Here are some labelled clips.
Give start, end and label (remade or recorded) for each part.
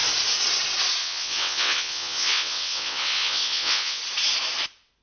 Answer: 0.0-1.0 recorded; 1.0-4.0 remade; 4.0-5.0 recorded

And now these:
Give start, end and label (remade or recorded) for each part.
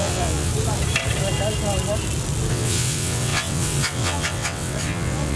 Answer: 0.0-0.5 remade; 0.5-2.5 recorded; 2.5-5.4 remade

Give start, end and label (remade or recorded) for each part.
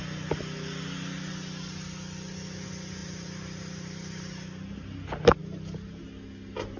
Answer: 0.0-3.0 recorded; 3.0-4.2 remade; 4.2-5.4 recorded; 5.4-6.0 remade; 6.0-6.8 recorded